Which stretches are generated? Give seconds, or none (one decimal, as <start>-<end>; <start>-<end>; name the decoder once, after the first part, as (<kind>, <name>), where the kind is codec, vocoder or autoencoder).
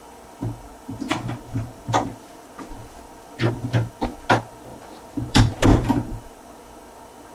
0.7-2.1 (vocoder, BigVGAN v2); 4.7-6.2